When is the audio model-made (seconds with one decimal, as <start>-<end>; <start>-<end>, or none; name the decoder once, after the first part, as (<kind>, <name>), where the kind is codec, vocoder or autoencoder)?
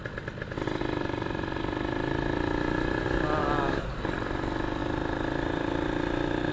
3.4-3.9 (codec, DAC)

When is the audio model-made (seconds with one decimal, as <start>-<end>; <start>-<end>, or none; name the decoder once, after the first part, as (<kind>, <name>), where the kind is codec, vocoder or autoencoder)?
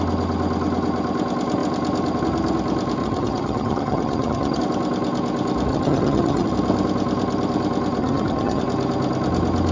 3.0-4.6 (vocoder, HiFi-GAN); 5.7-6.5; 8.0-8.6